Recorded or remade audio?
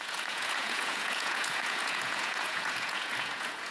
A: remade